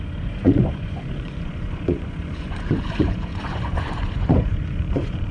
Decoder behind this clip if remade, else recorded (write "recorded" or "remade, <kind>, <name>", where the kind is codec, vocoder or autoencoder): remade, vocoder, Vocos